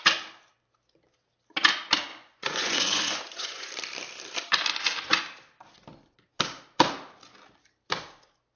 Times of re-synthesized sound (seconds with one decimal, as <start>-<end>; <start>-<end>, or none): 2.1-3.7